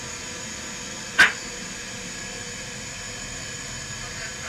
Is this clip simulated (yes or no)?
no